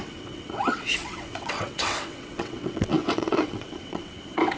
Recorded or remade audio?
remade